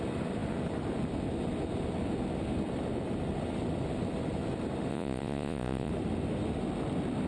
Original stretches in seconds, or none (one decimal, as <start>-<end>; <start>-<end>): 0.0-4.9; 5.9-7.3